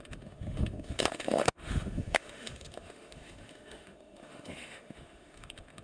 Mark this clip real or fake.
fake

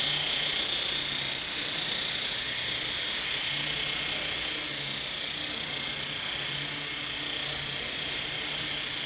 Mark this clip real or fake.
real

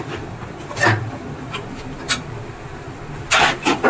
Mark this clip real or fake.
fake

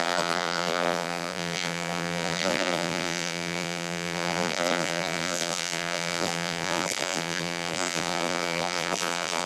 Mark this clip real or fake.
fake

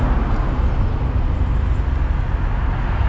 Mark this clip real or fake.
real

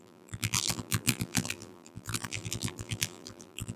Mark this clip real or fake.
fake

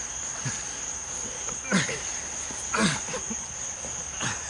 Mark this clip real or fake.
real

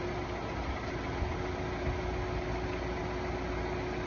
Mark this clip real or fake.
real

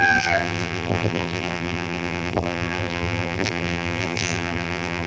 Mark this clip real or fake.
fake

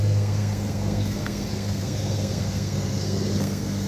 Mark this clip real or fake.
fake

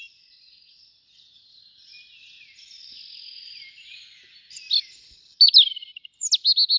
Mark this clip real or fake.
real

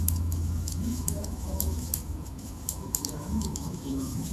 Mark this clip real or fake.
fake